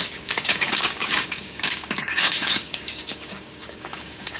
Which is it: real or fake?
fake